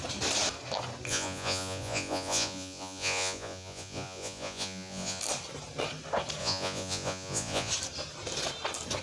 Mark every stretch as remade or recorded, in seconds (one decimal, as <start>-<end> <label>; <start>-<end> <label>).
0.0-1.1 recorded; 1.1-5.2 remade; 5.2-6.4 recorded; 6.4-7.7 remade; 7.7-9.0 recorded